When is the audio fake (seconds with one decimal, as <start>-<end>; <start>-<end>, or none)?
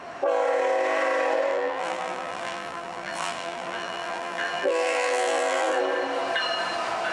1.5-5.8